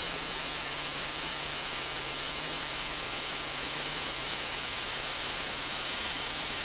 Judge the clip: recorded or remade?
remade